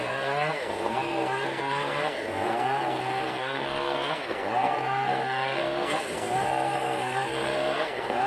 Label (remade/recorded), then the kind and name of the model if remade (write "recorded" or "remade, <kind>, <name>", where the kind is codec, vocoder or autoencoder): remade, codec, SNAC